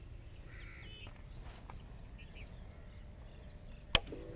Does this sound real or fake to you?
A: real